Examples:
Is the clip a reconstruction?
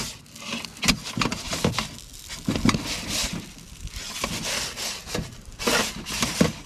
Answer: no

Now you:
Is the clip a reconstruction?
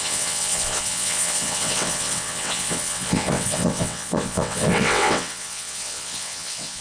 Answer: yes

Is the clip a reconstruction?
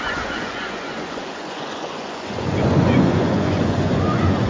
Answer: yes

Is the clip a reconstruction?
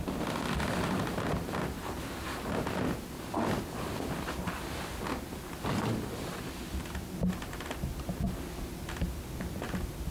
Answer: no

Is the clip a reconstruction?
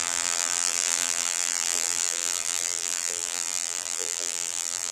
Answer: yes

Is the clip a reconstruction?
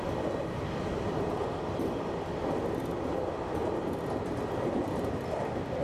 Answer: no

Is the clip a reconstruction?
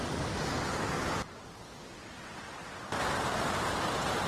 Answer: no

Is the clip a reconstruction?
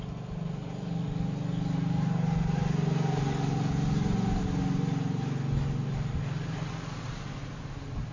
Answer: no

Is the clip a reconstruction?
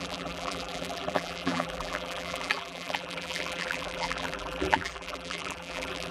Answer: yes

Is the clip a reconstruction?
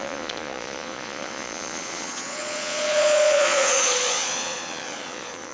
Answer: yes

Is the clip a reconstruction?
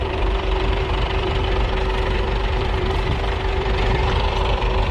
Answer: yes